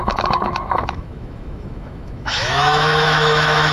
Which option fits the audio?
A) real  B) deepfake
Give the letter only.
B